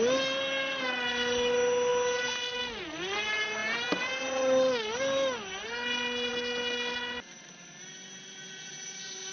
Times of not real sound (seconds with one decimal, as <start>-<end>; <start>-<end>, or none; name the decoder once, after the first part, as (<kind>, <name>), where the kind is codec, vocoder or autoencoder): none